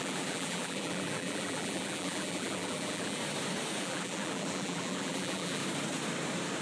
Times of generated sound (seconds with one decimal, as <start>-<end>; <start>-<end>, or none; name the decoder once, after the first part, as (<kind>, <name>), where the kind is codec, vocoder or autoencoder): 0.0-3.2 (vocoder, BigVGAN v2); 3.8-5.6